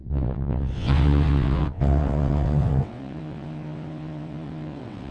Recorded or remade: remade